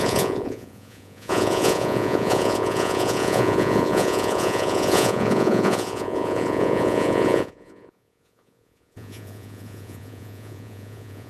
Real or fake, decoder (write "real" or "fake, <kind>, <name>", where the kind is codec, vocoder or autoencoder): fake, vocoder, Vocos